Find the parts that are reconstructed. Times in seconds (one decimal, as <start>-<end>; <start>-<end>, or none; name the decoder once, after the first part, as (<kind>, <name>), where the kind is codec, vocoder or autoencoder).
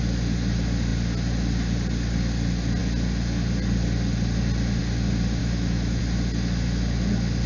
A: 5.4-6.0 (autoencoder, DAC-VAE)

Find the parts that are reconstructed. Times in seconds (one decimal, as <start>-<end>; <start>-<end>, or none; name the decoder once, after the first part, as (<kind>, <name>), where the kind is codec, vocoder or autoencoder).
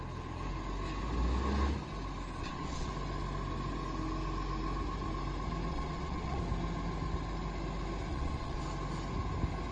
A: 2.4-2.9 (vocoder, WaveNeXt); 5.7-6.4; 8.1-8.6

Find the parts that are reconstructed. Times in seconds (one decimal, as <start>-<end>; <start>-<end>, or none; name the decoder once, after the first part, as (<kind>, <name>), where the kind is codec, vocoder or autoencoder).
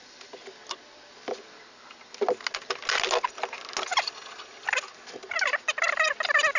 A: none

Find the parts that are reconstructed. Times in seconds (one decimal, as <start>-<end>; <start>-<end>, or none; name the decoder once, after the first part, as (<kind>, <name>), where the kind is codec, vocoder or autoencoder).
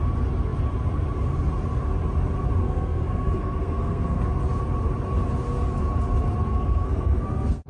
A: 2.6-4.2 (codec, SNAC); 6.5-7.7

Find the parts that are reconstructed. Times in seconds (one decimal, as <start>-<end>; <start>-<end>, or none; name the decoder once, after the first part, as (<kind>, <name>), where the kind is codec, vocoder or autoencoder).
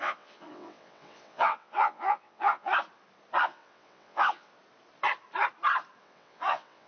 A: 0.0-2.7 (vocoder, WaveNeXt); 3.4-4.5; 6.0-6.9